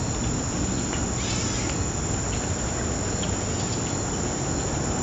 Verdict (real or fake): real